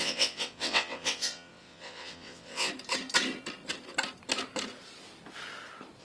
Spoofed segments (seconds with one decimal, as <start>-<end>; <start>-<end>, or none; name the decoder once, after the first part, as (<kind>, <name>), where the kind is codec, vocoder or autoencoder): 0.0-2.7 (vocoder, WaveNeXt)